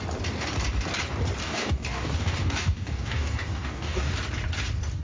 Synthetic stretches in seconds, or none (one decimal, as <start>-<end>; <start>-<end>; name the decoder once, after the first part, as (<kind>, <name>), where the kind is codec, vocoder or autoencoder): 1.4-4.1 (codec, DAC)